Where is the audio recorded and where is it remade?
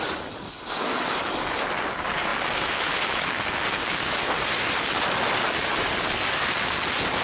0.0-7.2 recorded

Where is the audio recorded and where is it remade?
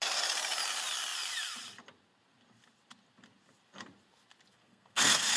0.0-4.5 recorded; 4.5-5.4 remade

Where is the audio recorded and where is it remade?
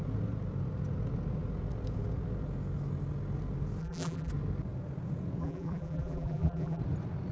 0.0-3.8 recorded; 3.8-4.3 remade; 4.3-5.4 recorded; 5.4-6.8 remade; 6.8-7.3 recorded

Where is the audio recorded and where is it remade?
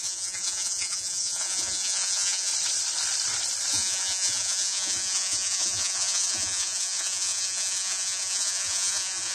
0.0-2.5 remade; 2.5-3.7 recorded; 3.7-9.3 remade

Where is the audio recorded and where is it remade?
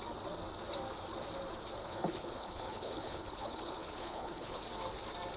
0.0-1.8 recorded; 1.8-4.6 remade; 4.6-5.4 recorded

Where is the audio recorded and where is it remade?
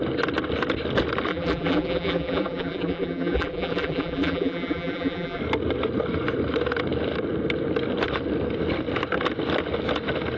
0.0-1.3 recorded; 1.3-5.4 remade; 5.4-10.4 recorded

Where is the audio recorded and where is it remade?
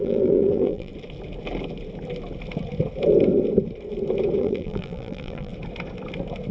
0.0-0.9 remade; 0.9-4.4 recorded; 4.4-5.5 remade; 5.5-6.5 recorded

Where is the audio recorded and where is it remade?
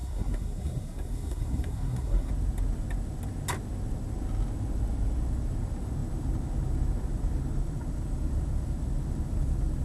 0.0-2.3 remade; 2.3-9.8 recorded